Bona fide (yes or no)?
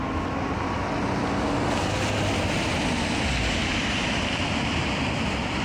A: yes